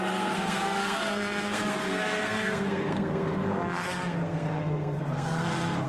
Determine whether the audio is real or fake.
fake